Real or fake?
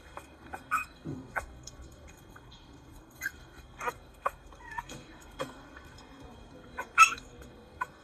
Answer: fake